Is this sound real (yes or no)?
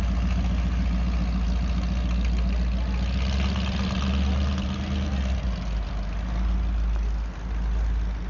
yes